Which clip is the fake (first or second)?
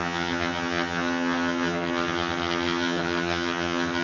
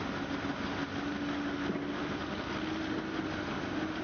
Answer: first